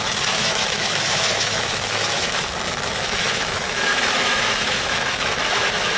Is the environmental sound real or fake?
fake